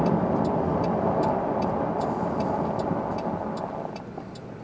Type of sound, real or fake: real